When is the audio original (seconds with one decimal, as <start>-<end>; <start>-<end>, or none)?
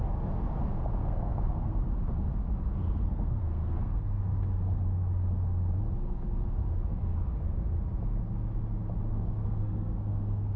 0.0-1.0; 1.8-2.8; 4.2-9.1